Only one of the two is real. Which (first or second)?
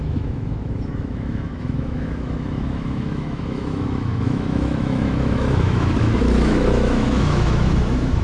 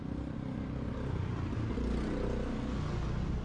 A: second